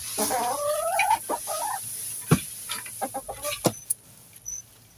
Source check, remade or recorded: recorded